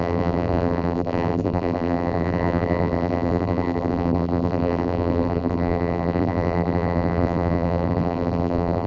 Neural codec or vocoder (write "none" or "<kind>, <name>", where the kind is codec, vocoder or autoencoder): vocoder, BigVGAN v2